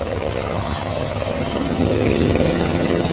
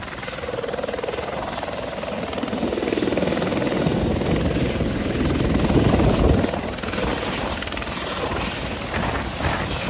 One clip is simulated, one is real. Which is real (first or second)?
second